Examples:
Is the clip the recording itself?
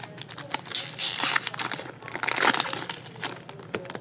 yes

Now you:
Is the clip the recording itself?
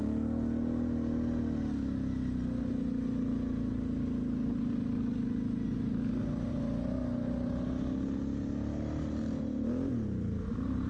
yes